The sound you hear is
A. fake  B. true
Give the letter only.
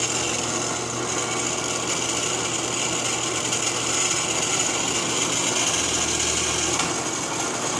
B